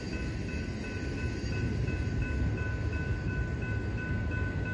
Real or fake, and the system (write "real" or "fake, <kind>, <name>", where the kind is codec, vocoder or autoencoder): real